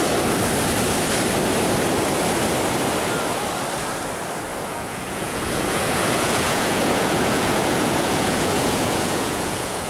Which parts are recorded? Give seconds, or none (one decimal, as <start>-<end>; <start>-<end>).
0.0-4.5